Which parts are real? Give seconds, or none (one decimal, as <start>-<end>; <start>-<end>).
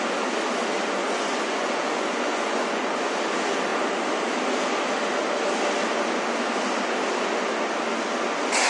0.0-1.0; 3.1-8.7